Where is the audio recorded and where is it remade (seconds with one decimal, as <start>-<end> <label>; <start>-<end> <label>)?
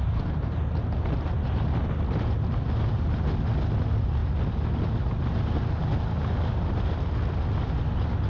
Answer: 0.0-8.3 recorded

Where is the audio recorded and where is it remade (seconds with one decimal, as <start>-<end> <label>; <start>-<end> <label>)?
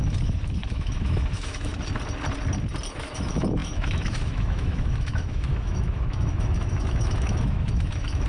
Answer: 0.0-1.7 remade; 1.7-2.9 recorded; 2.9-8.3 remade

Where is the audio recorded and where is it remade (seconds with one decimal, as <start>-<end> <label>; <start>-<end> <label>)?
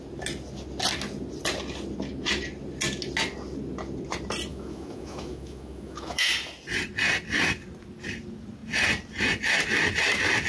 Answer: 0.0-4.5 recorded; 4.5-6.3 remade; 6.3-10.5 recorded